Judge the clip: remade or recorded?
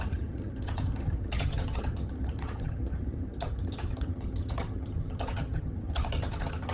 remade